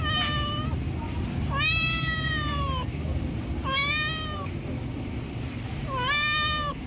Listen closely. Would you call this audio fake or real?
real